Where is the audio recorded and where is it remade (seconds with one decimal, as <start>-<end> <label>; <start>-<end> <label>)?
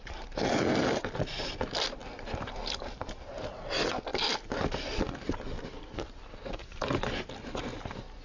0.0-8.2 recorded